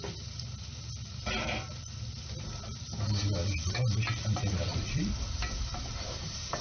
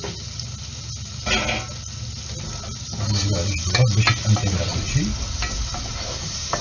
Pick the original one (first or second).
second